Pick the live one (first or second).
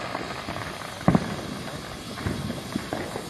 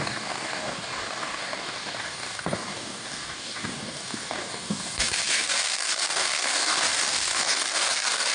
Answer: first